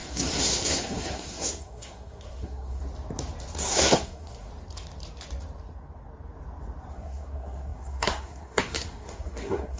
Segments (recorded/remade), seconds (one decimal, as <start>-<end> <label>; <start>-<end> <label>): 0.0-2.8 remade; 2.8-3.6 recorded; 3.6-4.5 remade; 4.5-6.9 recorded; 6.9-9.8 remade